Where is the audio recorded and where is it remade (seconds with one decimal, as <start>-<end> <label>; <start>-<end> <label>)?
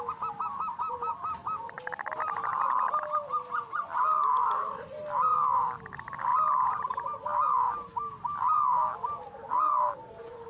0.0-10.5 recorded